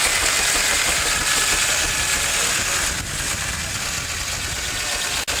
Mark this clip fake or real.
real